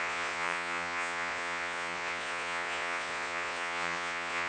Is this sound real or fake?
fake